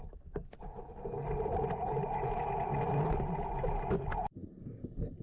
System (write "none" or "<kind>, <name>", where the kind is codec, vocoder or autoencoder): none